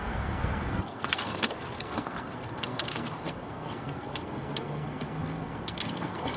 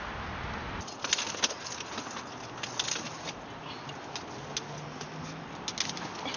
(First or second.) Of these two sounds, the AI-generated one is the first